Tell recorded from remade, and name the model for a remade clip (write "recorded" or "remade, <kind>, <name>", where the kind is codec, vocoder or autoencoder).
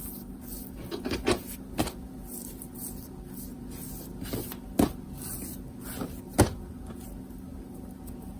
recorded